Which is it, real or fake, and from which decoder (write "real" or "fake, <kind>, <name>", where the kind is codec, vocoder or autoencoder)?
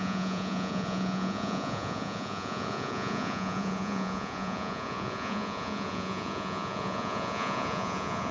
fake, vocoder, Vocos